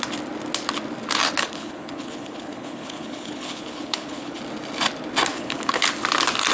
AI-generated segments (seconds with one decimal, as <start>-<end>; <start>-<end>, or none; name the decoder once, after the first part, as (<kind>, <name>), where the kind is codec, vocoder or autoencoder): 1.4-4.4 (codec, HILCodec); 5.3-5.9